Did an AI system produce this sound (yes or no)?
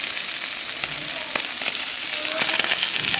no